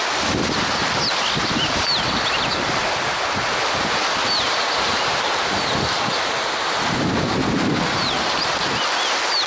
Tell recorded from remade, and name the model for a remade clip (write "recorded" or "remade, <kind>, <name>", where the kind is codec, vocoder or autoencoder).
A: recorded